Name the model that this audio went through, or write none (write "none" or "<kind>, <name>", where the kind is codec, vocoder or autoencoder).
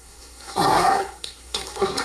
codec, SNAC